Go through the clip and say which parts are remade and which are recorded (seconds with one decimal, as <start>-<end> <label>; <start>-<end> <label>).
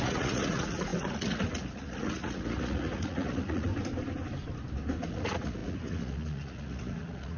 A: 0.0-3.7 remade; 3.7-5.1 recorded; 5.1-7.4 remade